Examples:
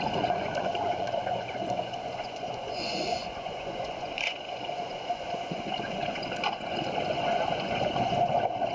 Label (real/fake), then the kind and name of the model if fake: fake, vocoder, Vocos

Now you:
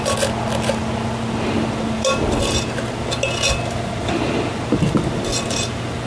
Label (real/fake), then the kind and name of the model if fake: real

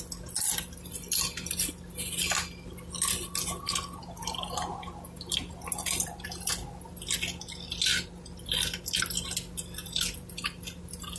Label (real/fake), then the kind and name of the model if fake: real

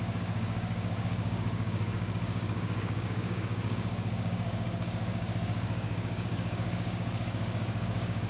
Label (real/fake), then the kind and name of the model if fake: fake, codec, DAC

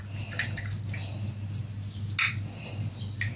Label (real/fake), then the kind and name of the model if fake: real